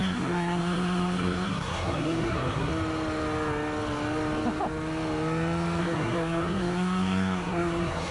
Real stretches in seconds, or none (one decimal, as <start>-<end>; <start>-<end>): 2.7-5.8